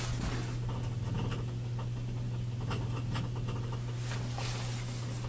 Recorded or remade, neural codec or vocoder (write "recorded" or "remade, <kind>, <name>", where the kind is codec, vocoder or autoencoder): recorded